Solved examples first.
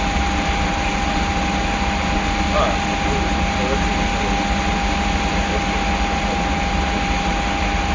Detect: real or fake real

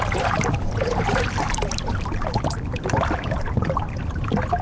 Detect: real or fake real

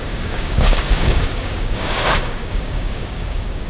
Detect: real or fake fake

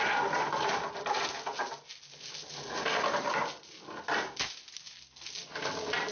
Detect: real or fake real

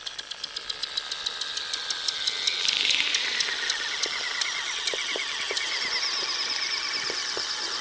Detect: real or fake real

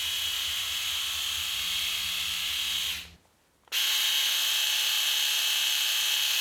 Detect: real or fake real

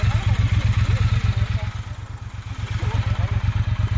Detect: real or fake real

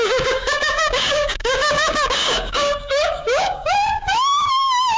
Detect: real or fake fake